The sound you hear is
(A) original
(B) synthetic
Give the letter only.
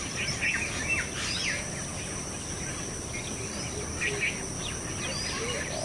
A